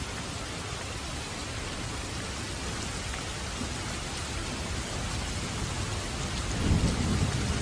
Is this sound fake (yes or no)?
no